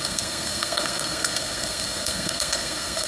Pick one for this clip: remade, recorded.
remade